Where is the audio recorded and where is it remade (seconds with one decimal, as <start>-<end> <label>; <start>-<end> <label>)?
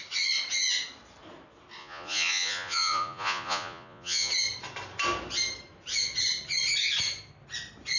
0.0-1.8 recorded; 1.8-4.3 remade; 4.3-8.0 recorded